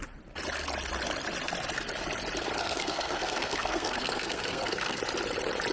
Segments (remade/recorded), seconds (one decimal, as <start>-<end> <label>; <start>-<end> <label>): 0.0-2.6 recorded; 2.6-5.0 remade; 5.0-5.7 recorded